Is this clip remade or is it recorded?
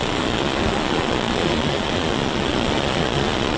remade